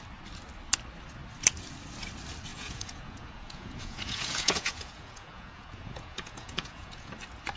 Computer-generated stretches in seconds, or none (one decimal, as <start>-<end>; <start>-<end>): 2.5-7.1